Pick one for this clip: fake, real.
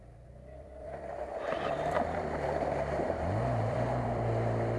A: fake